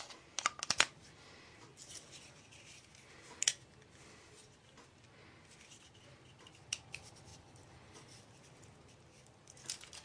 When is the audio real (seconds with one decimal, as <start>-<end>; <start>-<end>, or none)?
0.0-1.7; 2.6-7.3; 8.3-10.0